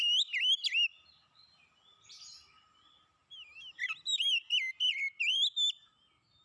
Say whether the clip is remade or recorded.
recorded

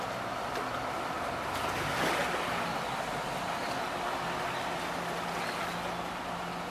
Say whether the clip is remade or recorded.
recorded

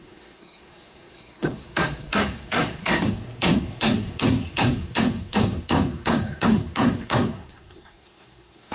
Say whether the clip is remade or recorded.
remade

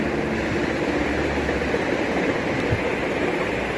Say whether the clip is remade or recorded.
recorded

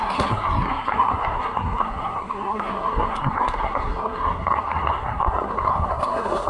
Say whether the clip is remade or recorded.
remade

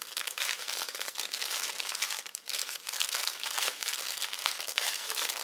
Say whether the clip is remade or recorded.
remade